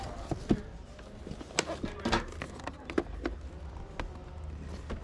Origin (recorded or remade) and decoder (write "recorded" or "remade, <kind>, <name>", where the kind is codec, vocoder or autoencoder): recorded